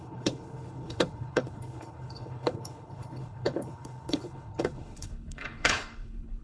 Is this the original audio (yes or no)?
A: no